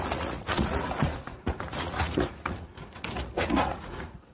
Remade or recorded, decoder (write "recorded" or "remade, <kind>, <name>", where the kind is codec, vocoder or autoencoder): remade, vocoder, Vocos